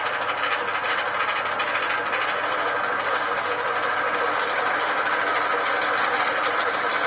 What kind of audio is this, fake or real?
real